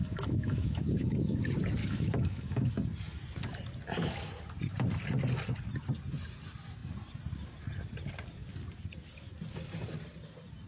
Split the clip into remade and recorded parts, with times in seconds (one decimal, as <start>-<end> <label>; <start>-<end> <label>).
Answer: 0.0-1.4 remade; 1.4-1.8 recorded; 1.8-2.7 remade; 2.7-10.7 recorded